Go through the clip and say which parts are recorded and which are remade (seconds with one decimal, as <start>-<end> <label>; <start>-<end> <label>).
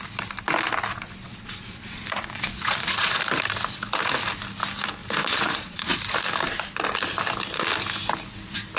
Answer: 0.0-0.9 recorded; 0.9-3.2 remade; 3.2-5.0 recorded; 5.0-6.0 remade; 6.0-8.8 recorded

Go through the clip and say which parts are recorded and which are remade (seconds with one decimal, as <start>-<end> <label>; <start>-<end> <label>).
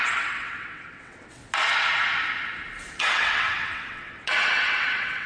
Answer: 0.0-1.4 remade; 1.4-3.0 recorded; 3.0-5.3 remade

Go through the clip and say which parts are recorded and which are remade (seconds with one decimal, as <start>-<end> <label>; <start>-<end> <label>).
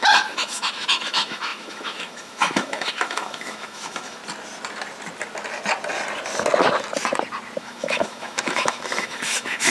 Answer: 0.0-4.2 remade; 4.2-7.6 recorded; 7.6-9.7 remade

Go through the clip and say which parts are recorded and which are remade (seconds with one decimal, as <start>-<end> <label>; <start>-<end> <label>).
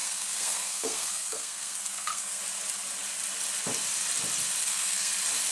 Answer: 0.0-2.4 remade; 2.4-4.6 recorded; 4.6-5.1 remade; 5.1-5.5 recorded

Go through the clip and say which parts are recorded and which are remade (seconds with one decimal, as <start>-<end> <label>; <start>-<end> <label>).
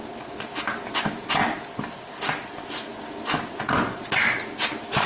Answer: 0.0-5.1 recorded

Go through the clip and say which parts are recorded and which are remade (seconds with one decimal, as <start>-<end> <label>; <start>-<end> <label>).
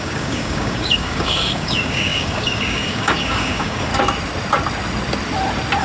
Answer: 0.0-3.9 remade; 3.9-5.8 recorded